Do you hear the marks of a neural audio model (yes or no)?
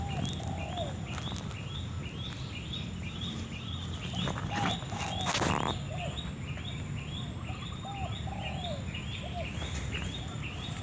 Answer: no